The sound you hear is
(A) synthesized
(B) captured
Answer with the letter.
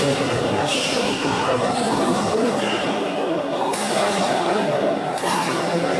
A